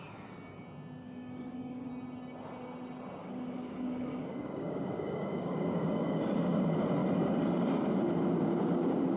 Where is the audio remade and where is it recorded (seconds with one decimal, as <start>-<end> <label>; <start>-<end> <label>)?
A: 0.0-1.0 recorded; 1.0-1.9 remade; 1.9-3.2 recorded; 3.2-6.2 remade; 6.2-9.2 recorded